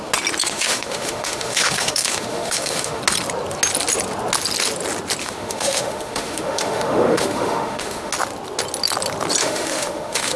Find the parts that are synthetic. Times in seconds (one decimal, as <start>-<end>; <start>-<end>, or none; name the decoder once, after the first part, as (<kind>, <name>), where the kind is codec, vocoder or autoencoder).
0.4-3.0 (autoencoder, DAC-VAE); 5.2-8.1; 9.4-10.4